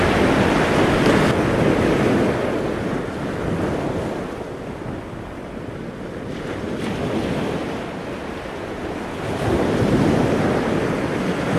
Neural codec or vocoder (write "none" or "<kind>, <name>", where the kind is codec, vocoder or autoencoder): none